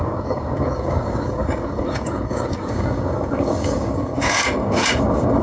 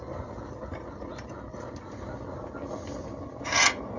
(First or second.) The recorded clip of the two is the second